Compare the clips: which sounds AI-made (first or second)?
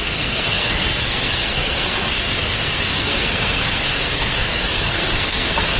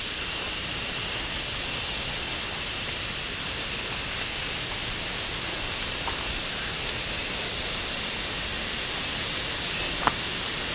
first